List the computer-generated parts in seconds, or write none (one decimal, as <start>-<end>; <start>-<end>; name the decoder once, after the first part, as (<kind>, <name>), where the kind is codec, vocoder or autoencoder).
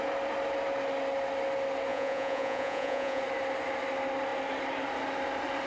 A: 1.9-3.2 (vocoder, Vocos)